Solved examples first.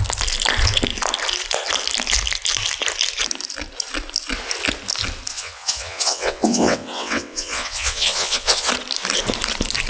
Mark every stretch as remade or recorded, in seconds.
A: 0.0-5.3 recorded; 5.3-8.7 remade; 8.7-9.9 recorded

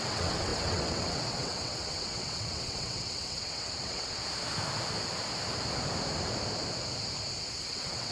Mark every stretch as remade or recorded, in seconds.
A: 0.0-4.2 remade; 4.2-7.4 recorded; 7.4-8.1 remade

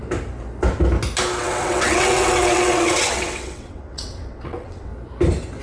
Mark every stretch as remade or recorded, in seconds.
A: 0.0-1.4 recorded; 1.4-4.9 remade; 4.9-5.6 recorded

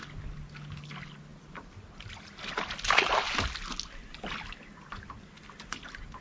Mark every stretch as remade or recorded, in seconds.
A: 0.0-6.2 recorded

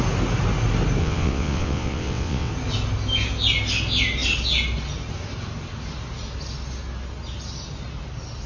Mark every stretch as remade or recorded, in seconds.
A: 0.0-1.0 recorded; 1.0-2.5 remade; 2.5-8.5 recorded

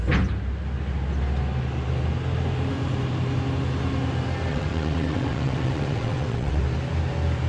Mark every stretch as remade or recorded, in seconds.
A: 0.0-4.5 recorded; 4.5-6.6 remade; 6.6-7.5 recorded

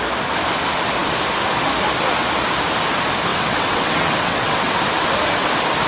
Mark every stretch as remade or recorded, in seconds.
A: 0.0-3.3 recorded; 3.3-4.7 remade; 4.7-5.9 recorded